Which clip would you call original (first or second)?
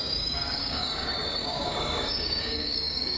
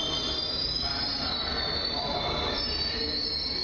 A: second